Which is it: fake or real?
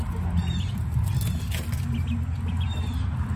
real